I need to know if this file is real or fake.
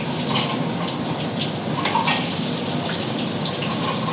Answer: real